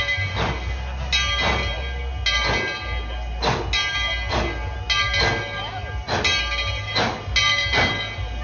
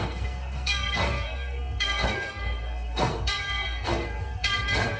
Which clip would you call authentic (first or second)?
first